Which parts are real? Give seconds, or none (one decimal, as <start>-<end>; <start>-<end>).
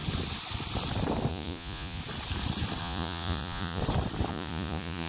0.0-1.3; 2.0-2.8; 3.8-4.3